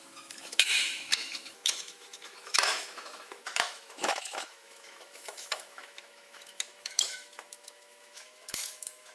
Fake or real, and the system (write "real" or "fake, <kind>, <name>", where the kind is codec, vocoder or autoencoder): fake, autoencoder, DAC-VAE